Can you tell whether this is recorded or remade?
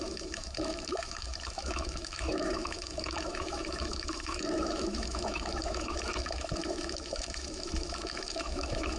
remade